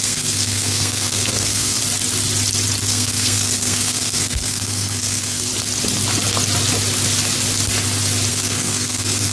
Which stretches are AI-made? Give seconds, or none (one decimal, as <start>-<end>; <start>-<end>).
0.0-1.8; 2.8-5.5; 8.3-9.3